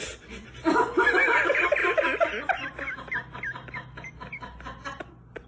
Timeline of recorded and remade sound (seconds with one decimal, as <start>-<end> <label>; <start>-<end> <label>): 0.0-5.5 recorded